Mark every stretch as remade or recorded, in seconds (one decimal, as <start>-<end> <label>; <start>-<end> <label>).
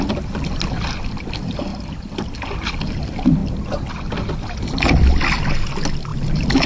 0.0-1.7 recorded; 1.7-2.7 remade; 2.7-6.7 recorded